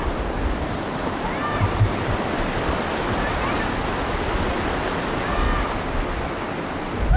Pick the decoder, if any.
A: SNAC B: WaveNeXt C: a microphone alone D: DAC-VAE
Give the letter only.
C